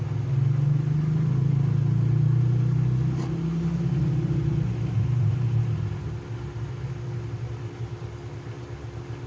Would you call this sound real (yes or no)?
yes